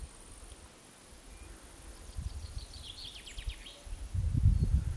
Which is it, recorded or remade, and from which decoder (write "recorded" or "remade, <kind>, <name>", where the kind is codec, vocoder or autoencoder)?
recorded